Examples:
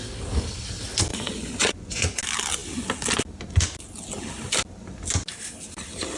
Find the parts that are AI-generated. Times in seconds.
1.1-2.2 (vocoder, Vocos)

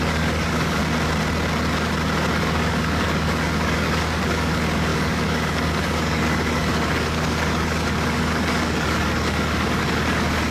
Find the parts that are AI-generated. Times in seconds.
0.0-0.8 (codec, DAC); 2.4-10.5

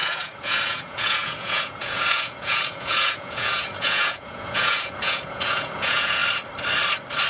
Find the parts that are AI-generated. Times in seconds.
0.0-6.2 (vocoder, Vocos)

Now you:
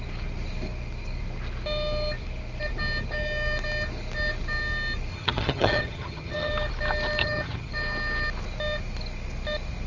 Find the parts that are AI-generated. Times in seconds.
5.1-6.5 (vocoder, HiFi-GAN); 7.2-7.7

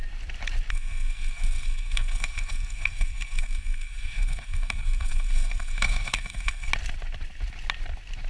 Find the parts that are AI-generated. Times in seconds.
0.7-6.7 (codec, SNAC)

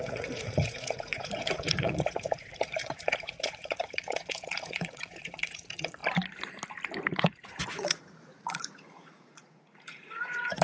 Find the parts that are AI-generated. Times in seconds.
0.0-6.0 (vocoder, Vocos); 7.2-10.6

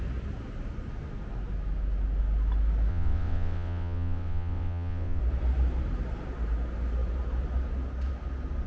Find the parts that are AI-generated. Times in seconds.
2.9-5.2 (vocoder, WaveNeXt)